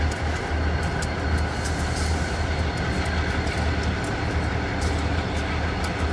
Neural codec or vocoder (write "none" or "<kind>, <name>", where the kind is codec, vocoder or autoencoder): none